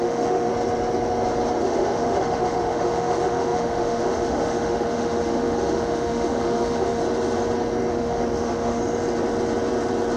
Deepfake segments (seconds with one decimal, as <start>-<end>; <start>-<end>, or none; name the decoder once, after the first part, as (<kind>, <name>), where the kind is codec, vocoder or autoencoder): 0.0-0.5 (autoencoder, DAC-VAE); 1.6-7.0; 7.9-8.8